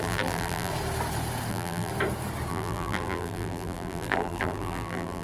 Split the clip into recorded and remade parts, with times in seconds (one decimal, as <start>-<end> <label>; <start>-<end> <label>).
0.0-0.7 remade; 0.7-1.5 recorded; 1.5-1.9 remade; 1.9-2.5 recorded; 2.5-5.2 remade